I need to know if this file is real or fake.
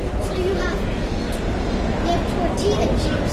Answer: real